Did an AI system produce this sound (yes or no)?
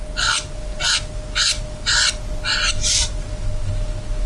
no